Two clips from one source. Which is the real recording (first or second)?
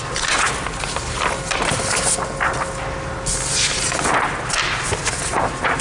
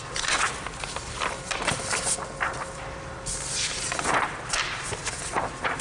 first